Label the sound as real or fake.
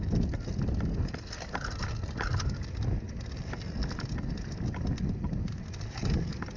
real